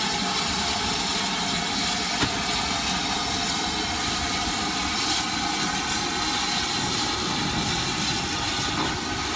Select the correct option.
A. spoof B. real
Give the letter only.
B